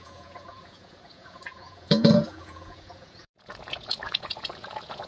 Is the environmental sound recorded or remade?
remade